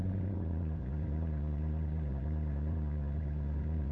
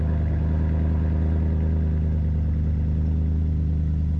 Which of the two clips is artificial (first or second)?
first